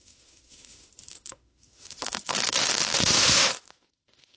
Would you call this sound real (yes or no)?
no